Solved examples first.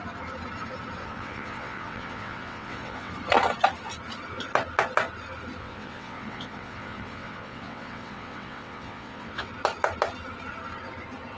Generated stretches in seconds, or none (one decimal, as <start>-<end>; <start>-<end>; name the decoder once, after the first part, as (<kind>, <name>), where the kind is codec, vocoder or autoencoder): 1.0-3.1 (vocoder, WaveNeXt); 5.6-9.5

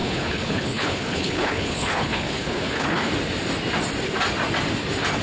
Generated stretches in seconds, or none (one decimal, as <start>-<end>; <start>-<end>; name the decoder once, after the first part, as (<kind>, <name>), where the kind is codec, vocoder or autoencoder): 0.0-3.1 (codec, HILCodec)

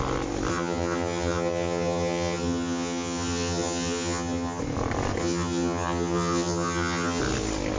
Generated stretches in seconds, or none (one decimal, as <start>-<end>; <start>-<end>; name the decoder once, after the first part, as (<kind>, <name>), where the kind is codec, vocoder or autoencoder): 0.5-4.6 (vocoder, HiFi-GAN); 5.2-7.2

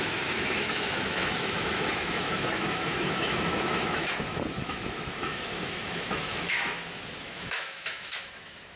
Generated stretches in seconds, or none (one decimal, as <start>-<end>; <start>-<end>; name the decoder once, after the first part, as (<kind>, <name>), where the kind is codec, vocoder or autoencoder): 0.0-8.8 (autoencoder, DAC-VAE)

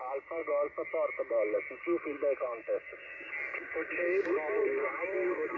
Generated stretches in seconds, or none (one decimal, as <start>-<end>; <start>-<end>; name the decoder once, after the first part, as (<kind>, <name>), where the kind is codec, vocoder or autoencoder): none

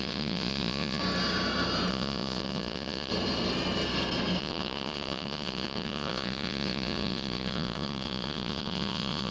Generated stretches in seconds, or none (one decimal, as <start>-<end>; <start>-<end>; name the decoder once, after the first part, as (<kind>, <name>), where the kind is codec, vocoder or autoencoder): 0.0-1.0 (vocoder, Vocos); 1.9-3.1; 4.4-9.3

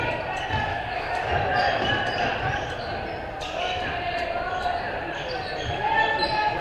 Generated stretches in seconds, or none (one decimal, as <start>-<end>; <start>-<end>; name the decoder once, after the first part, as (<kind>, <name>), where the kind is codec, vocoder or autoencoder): 0.7-1.3 (codec, DAC)